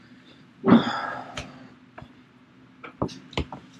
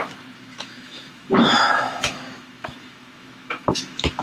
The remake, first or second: second